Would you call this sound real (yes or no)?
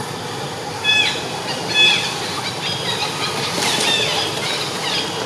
yes